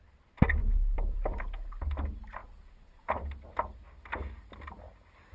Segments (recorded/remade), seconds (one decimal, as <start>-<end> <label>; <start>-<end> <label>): 0.0-0.6 recorded; 0.6-1.4 remade; 1.4-5.3 recorded